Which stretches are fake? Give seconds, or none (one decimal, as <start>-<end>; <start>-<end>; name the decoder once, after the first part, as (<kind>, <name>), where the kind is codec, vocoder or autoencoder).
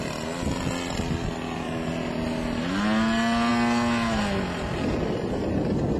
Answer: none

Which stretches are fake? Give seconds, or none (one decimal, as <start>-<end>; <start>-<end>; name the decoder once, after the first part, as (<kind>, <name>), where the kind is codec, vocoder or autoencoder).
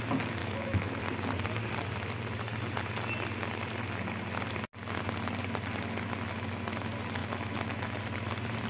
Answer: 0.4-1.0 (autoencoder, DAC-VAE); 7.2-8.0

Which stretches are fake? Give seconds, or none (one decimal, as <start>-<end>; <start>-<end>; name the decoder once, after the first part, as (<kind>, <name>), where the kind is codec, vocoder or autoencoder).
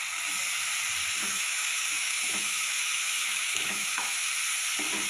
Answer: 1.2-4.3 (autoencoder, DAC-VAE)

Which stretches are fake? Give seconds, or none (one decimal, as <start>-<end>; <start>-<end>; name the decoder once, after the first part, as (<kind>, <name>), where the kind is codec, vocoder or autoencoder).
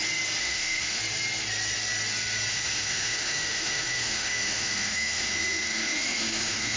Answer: 0.4-1.0 (autoencoder, DAC-VAE); 2.5-6.8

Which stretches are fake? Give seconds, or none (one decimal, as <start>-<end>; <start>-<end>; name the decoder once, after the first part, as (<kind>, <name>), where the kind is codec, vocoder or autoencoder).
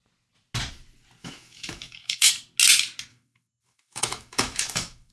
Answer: 1.2-2.3 (autoencoder, DAC-VAE); 3.1-5.1